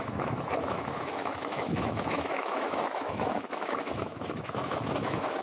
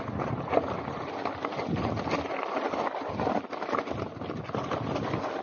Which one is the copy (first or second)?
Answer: first